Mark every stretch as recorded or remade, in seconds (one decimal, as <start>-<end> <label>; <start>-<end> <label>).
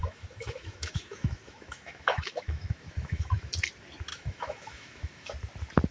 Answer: 0.0-3.5 remade; 3.5-4.1 recorded; 4.1-5.3 remade; 5.3-5.9 recorded